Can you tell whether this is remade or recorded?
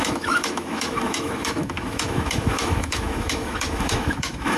remade